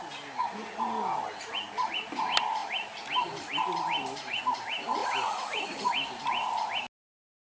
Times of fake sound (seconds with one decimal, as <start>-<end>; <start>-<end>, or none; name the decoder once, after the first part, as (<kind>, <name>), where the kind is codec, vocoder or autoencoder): none